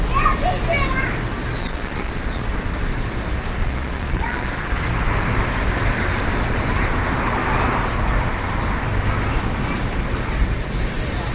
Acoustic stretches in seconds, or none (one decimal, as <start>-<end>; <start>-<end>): 0.0-1.6; 2.5-3.6; 4.5-11.3